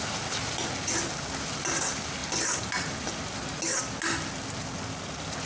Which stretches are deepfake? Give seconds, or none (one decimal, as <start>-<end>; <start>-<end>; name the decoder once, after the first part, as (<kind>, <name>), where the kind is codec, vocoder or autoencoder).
none